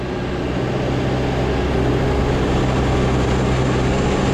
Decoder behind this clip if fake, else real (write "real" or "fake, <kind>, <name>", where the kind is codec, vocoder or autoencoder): real